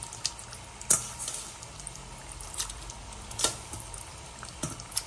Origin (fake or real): real